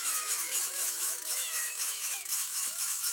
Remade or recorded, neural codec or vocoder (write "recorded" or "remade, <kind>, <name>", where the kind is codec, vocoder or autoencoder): remade, autoencoder, DAC-VAE